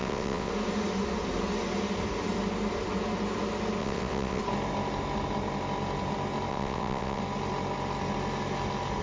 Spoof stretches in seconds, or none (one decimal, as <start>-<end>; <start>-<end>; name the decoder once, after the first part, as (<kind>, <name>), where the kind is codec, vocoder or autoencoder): 0.0-0.5 (vocoder, WaveNeXt); 3.8-4.4; 6.5-7.2